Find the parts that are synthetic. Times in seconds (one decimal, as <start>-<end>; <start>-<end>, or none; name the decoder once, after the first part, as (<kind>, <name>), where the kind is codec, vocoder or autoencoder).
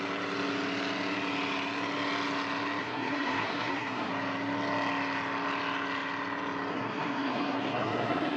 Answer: 2.8-4.1 (codec, SNAC); 6.7-8.4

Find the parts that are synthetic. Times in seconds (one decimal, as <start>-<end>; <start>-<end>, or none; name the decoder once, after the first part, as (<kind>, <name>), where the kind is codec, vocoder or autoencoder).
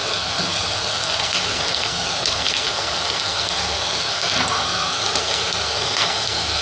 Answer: 0.0-6.6 (codec, SNAC)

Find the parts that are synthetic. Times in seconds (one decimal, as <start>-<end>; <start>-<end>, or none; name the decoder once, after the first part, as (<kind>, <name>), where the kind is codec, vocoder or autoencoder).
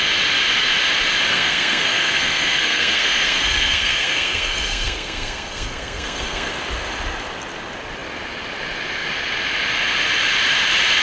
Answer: 1.3-6.5 (codec, SNAC)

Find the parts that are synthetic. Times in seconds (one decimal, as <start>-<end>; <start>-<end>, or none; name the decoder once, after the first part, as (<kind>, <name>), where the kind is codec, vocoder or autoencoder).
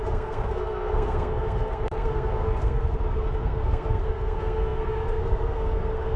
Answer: 0.0-6.2 (codec, SNAC)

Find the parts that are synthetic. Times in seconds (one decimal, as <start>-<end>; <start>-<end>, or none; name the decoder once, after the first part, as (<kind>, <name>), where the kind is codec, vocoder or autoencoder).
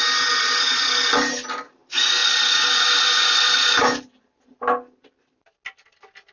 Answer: none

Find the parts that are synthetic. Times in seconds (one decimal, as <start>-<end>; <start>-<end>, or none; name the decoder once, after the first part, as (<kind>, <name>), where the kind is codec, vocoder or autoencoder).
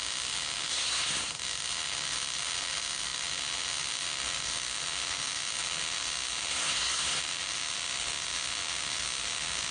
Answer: 0.7-1.3 (codec, SNAC); 6.5-7.2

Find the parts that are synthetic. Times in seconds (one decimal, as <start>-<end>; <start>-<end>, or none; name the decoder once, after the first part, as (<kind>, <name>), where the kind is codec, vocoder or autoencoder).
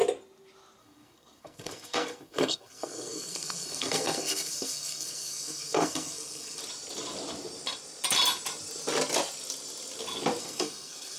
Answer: 0.8-6.6 (codec, SNAC); 10.4-11.2